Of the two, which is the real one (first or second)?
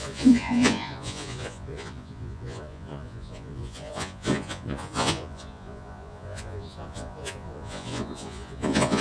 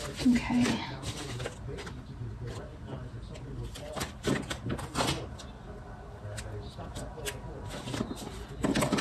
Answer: second